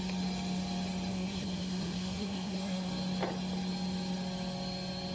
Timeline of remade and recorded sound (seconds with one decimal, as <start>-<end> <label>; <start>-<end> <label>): 0.0-1.1 recorded; 1.1-2.9 remade; 2.9-5.1 recorded